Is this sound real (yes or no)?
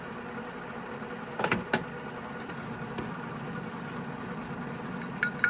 yes